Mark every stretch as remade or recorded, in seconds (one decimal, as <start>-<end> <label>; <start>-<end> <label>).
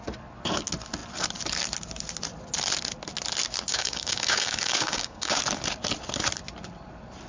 0.0-3.7 recorded; 3.7-5.4 remade; 5.4-7.3 recorded